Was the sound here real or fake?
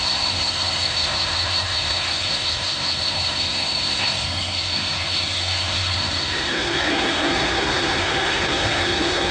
fake